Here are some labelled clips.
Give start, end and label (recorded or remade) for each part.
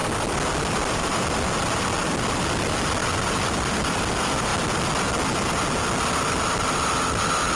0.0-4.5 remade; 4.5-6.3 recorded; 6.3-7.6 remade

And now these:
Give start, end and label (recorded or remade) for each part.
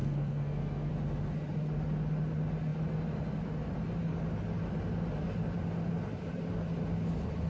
0.0-0.9 remade; 0.9-7.5 recorded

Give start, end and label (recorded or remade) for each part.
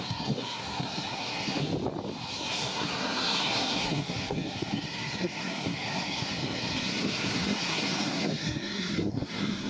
0.0-1.7 remade; 1.7-2.3 recorded; 2.3-9.7 remade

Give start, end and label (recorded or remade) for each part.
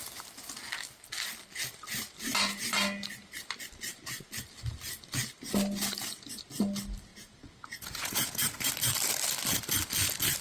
0.0-7.1 recorded; 7.1-8.7 remade; 8.7-10.4 recorded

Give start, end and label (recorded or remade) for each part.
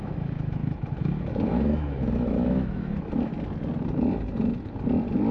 0.0-3.3 remade; 3.3-5.3 recorded